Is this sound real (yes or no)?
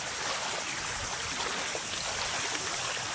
yes